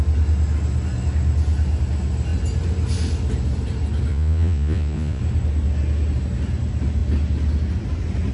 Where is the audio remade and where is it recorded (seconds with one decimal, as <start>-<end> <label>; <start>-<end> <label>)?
0.0-4.1 recorded; 4.1-5.2 remade; 5.2-8.3 recorded